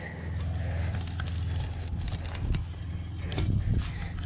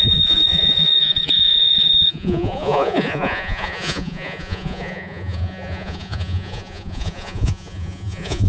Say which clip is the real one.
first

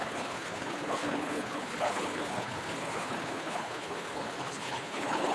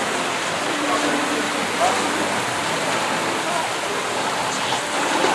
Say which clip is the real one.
second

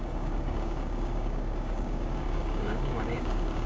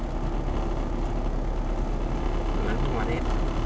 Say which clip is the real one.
second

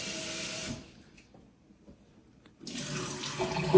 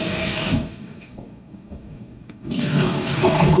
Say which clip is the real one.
first